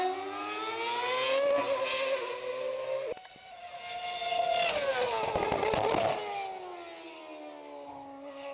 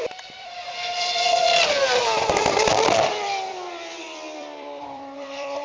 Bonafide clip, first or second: first